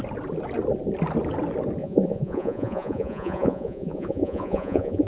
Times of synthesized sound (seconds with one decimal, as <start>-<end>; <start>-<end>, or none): 1.8-5.1